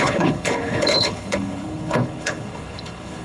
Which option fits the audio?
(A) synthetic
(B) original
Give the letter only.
A